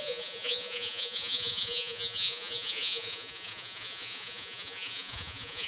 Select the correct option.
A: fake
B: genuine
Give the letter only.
A